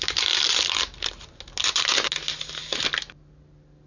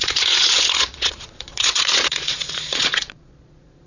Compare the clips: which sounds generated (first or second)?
second